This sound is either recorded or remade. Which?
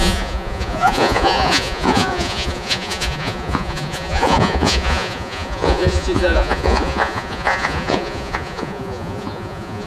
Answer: remade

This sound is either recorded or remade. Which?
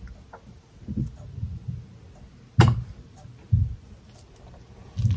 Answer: recorded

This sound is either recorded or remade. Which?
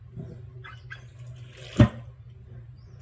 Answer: recorded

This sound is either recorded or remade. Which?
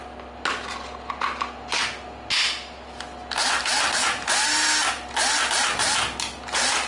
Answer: recorded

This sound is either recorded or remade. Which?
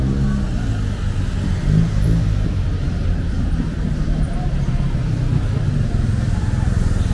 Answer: recorded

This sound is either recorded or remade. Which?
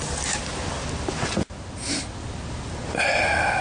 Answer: recorded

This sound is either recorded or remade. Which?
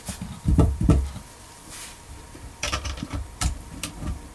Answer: remade